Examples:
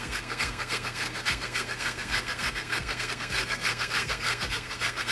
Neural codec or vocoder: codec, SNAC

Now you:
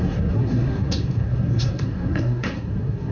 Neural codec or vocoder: codec, SNAC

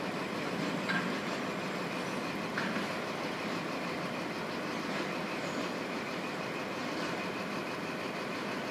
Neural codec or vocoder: none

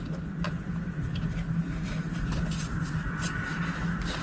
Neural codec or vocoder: none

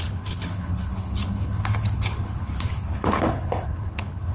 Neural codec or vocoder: codec, HILCodec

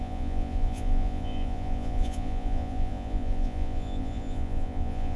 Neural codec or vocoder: vocoder, Vocos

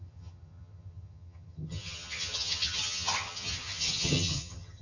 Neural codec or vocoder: vocoder, HiFi-GAN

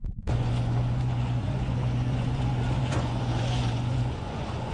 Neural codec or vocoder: vocoder, Vocos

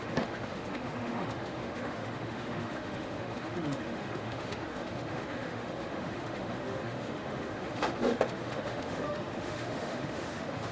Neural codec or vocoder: autoencoder, DAC-VAE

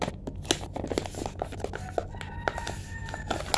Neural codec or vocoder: none